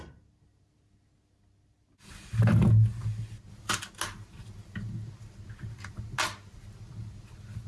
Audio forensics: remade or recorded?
recorded